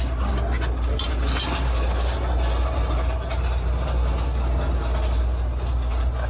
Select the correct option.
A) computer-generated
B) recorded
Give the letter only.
B